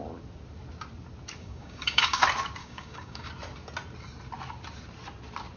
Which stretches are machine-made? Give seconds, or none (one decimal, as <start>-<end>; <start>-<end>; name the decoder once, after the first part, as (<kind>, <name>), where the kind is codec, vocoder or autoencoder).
1.4-2.2 (codec, DAC); 2.6-3.3